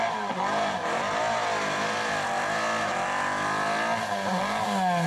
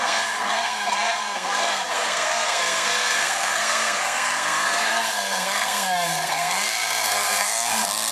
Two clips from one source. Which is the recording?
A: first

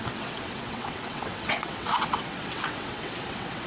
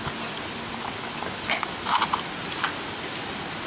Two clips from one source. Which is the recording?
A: second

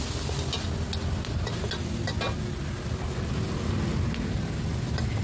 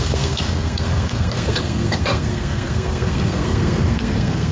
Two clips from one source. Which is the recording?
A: first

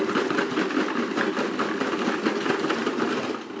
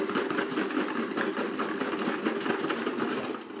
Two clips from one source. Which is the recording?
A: second